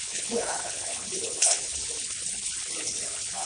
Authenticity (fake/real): fake